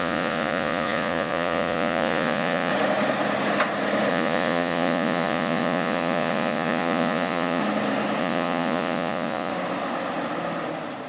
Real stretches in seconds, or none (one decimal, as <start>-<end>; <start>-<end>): 2.7-4.1; 7.6-8.2; 9.5-11.1